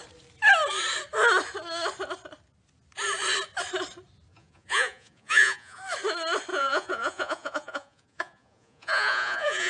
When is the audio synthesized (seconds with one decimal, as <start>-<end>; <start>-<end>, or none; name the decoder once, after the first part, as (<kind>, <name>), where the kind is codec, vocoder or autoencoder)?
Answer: 4.3-5.8 (vocoder, Vocos); 6.5-9.7